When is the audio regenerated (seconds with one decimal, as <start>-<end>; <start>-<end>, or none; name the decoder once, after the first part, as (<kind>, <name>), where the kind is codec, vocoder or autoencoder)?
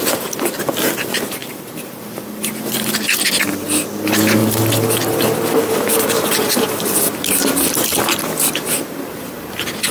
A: 1.4-2.1 (vocoder, BigVGAN v2); 4.4-9.3